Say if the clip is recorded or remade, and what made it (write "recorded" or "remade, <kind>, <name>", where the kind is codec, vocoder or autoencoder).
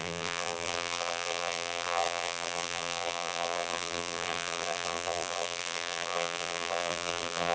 remade, vocoder, BigVGAN v2